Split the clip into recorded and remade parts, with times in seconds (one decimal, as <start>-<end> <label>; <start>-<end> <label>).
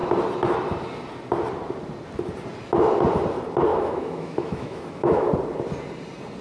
0.0-3.7 recorded; 3.7-5.3 remade; 5.3-6.4 recorded